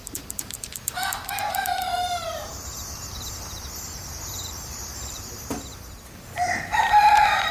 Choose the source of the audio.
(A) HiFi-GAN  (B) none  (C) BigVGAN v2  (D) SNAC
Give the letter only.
C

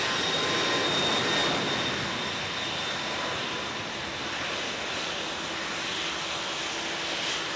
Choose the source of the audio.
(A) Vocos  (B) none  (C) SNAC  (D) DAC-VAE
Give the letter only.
B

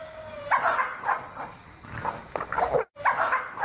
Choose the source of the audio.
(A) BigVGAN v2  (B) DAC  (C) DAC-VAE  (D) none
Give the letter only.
D